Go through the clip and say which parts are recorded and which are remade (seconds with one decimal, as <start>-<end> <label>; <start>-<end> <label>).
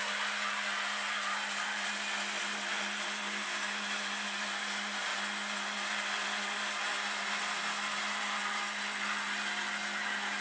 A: 0.0-10.4 recorded